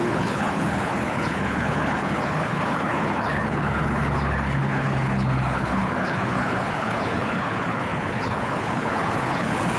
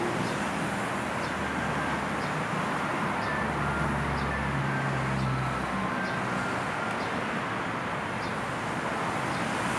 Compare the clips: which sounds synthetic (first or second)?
first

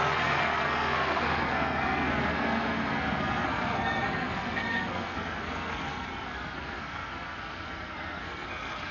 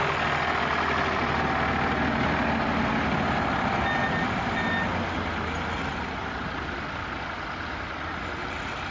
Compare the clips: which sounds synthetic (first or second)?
first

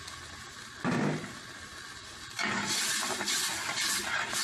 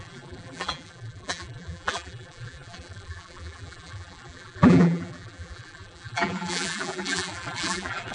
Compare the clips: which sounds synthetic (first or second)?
second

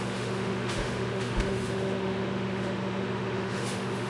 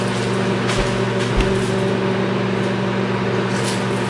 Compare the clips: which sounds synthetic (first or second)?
first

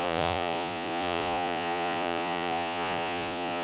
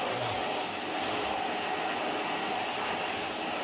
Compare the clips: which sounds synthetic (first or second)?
first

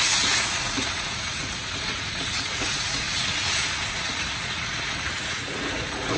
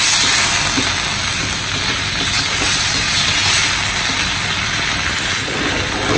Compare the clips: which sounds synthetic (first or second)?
first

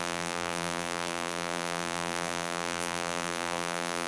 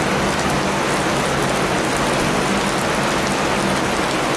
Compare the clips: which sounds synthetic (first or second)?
first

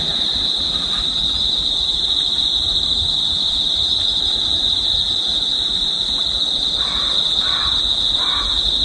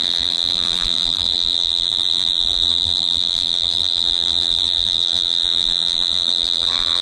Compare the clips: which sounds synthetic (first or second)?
second